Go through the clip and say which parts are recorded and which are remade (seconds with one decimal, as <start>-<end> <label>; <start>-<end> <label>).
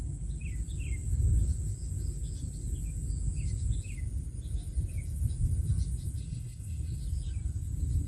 0.0-6.2 recorded; 6.2-7.0 remade; 7.0-8.1 recorded